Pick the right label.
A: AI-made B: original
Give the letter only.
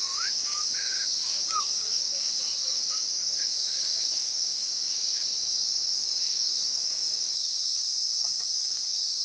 A